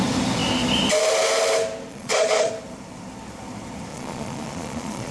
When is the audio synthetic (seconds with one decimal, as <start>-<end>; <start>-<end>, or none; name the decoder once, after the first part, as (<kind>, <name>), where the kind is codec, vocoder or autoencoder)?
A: 1.9-2.5 (vocoder, Vocos); 3.9-5.1